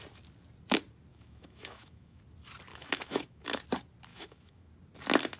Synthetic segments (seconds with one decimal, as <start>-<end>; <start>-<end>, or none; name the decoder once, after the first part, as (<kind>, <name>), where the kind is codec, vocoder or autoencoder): 1.1-2.2 (autoencoder, DAC-VAE); 2.7-3.6; 4.1-4.7